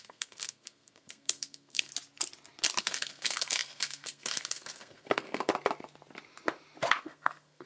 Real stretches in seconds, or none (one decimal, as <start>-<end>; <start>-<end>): 1.9-2.8; 5.5-7.0